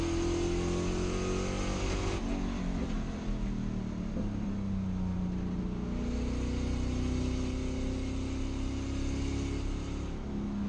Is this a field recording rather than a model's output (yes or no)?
yes